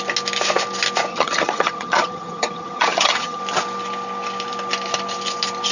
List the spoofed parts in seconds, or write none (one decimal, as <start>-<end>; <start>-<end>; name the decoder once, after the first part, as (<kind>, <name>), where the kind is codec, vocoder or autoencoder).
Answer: 1.1-3.4 (vocoder, HiFi-GAN)